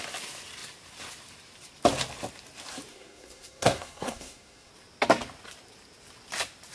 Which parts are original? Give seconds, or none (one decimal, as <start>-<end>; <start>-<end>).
0.0-2.9; 4.7-6.7